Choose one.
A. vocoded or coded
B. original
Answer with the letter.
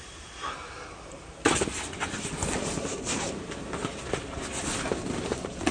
B